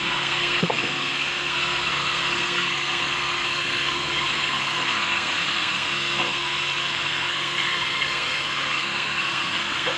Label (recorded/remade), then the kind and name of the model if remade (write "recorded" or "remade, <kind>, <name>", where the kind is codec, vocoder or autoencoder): remade, codec, SNAC